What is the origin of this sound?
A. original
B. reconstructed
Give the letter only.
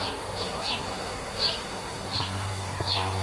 B